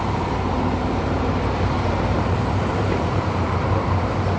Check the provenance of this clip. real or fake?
fake